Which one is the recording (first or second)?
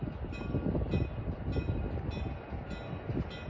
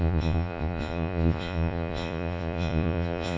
first